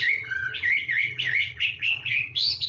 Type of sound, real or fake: fake